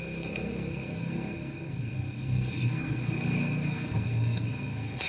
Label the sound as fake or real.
fake